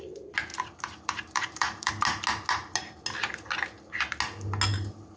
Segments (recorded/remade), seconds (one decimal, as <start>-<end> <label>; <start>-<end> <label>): 0.0-0.5 recorded; 0.5-1.9 remade; 1.9-5.2 recorded